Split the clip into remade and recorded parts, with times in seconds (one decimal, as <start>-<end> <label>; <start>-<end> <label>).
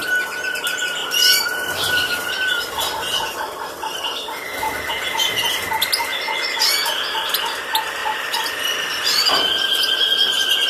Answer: 0.0-1.0 recorded; 1.0-4.9 remade; 4.9-8.0 recorded; 8.0-10.7 remade